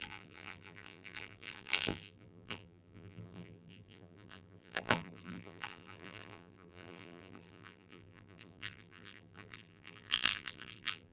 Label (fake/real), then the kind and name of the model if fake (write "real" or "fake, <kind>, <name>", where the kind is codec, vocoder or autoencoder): fake, vocoder, BigVGAN v2